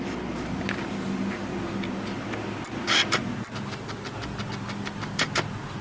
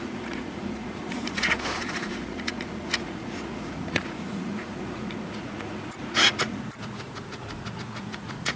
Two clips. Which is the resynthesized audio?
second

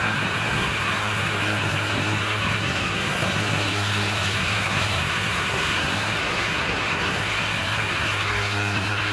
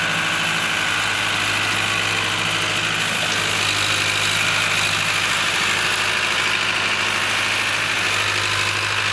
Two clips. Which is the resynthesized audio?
first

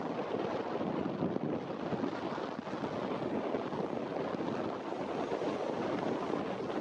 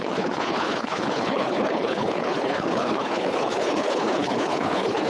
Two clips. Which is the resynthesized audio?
second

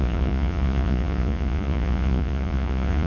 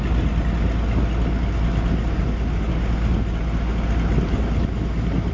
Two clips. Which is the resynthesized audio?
first